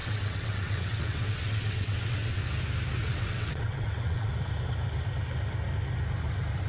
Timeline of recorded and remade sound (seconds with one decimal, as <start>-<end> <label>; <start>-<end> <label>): 0.0-2.4 remade; 2.4-3.0 recorded; 3.0-4.3 remade; 4.3-6.7 recorded